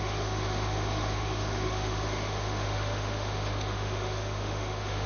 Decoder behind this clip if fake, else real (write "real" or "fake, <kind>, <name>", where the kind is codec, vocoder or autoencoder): fake, autoencoder, DAC-VAE